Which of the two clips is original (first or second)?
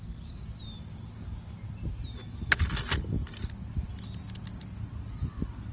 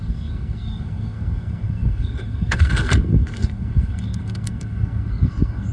first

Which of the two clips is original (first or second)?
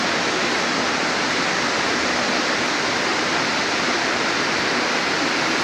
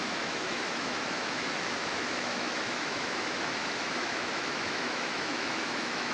first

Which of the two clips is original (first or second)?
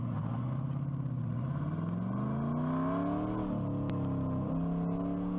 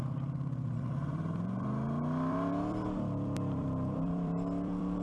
first